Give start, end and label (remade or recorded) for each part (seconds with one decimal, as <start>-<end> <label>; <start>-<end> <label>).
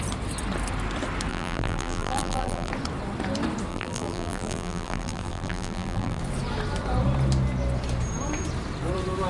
0.0-1.3 recorded; 1.3-2.7 remade; 2.7-3.7 recorded; 3.7-6.2 remade; 6.2-9.3 recorded